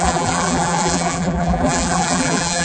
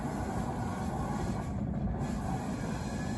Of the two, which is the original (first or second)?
second